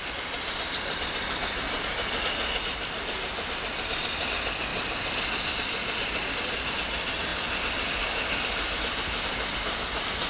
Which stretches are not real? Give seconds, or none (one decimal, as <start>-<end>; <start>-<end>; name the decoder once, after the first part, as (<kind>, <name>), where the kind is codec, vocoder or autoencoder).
0.0-1.9 (vocoder, BigVGAN v2); 4.7-6.3; 7.3-8.0